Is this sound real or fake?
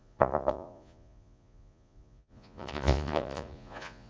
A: fake